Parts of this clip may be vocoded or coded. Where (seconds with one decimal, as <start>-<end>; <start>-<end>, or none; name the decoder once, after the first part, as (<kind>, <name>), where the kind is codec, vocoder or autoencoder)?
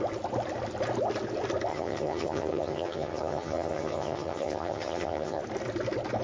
1.7-5.4 (vocoder, HiFi-GAN)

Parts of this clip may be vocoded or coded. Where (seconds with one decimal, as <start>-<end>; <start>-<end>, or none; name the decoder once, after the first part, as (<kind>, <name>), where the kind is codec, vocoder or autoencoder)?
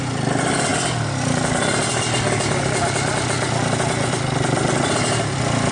none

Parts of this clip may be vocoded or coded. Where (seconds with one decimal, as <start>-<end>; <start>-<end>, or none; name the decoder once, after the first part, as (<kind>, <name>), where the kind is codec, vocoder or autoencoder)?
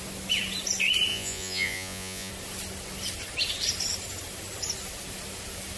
1.1-2.3 (vocoder, Vocos)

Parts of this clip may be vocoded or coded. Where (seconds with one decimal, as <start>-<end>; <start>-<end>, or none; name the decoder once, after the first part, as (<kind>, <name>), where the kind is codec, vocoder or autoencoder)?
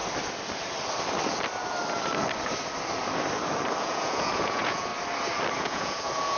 3.8-4.9 (vocoder, Vocos); 5.6-6.4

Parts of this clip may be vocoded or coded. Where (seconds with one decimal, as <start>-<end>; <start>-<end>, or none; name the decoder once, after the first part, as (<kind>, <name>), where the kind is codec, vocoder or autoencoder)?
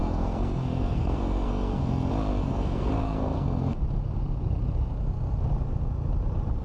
0.0-1.9 (codec, SNAC); 2.4-3.8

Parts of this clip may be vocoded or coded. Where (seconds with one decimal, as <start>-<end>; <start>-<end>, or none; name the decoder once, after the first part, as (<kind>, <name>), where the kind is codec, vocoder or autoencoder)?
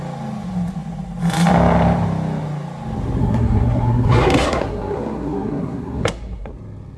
3.2-6.5 (codec, SNAC)